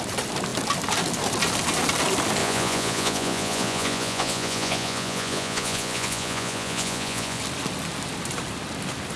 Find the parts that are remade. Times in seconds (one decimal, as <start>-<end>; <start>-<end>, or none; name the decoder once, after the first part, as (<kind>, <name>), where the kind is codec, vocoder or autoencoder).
2.4-7.4 (vocoder, Vocos)